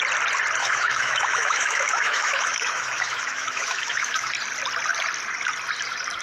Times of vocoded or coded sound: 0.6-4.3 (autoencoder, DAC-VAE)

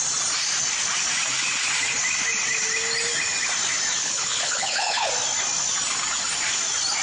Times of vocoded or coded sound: 4.0-5.1 (codec, HILCodec)

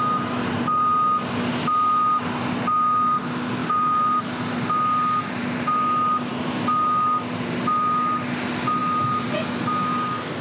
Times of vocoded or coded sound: none

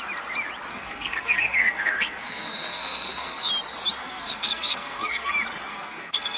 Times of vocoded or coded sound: 0.7-3.5 (codec, SNAC); 4.0-5.3; 5.7-6.4

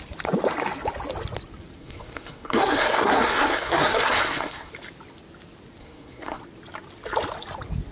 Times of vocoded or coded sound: 1.8-4.7 (codec, SNAC); 5.8-6.4

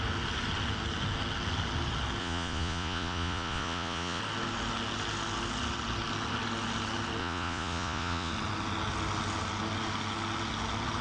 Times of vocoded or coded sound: 2.2-4.2 (vocoder, Vocos); 7.2-8.3

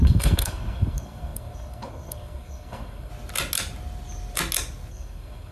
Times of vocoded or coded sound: 0.0-3.1 (codec, SNAC); 4.9-5.5

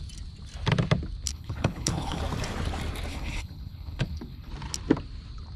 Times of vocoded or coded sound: 1.3-2.2 (codec, HILCodec); 3.1-4.5